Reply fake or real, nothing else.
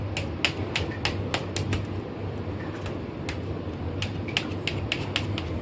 real